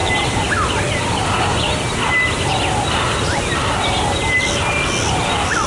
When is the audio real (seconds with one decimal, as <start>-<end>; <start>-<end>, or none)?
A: 0.0-5.7